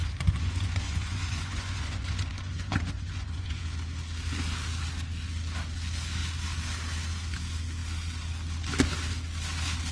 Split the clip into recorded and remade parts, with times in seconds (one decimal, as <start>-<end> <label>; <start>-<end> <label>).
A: 0.0-3.6 remade; 3.6-9.9 recorded